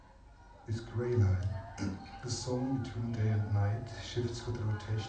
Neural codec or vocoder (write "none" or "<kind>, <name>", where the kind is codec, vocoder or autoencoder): none